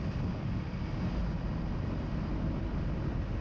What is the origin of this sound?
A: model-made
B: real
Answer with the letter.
B